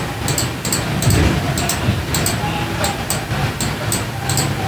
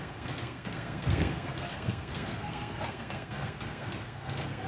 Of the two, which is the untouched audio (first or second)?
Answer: first